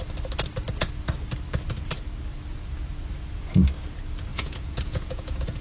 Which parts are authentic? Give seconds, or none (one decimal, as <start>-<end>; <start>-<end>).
0.0-4.3